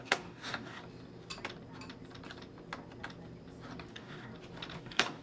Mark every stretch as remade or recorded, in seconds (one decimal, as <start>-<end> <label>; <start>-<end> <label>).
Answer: 0.0-0.8 remade; 0.8-3.9 recorded; 3.9-4.3 remade; 4.3-4.8 recorded; 4.8-5.2 remade